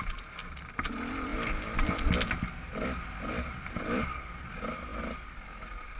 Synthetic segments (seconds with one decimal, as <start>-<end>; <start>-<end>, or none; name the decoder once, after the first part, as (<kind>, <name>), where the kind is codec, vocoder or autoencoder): none